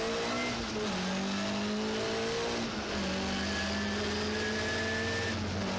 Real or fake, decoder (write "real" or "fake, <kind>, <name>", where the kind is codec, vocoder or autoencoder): real